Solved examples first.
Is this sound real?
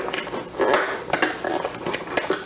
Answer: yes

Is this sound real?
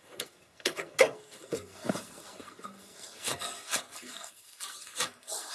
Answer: no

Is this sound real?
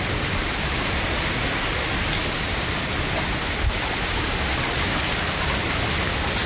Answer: yes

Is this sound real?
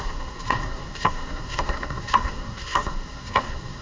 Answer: no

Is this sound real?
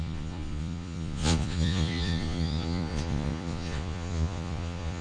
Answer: no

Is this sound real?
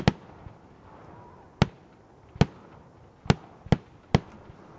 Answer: yes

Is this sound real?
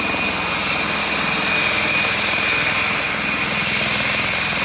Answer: yes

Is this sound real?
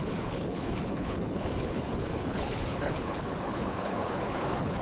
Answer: no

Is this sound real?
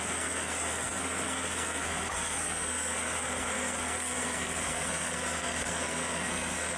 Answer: no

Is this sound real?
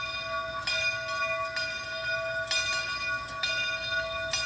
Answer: yes